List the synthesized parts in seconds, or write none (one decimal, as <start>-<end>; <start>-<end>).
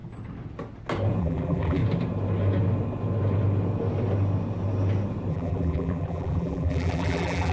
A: 1.2-1.8; 5.3-7.5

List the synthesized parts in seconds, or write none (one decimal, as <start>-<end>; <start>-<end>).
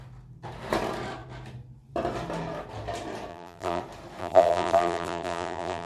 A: 3.3-3.8; 4.2-5.9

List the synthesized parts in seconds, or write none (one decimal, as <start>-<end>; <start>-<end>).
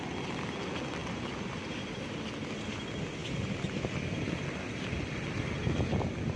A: none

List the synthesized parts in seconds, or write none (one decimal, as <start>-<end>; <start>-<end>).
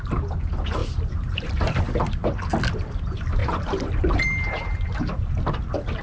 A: 0.8-1.8; 3.4-5.2